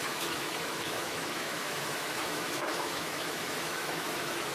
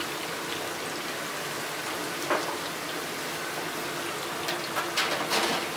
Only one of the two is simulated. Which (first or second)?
first